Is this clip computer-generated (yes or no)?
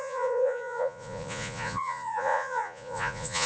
yes